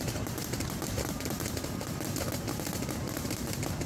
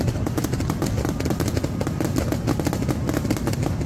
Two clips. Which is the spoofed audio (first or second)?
first